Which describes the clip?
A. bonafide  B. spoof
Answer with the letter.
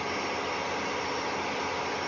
A